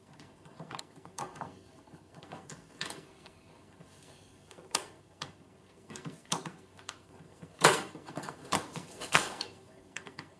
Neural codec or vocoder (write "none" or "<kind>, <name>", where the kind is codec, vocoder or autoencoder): codec, SNAC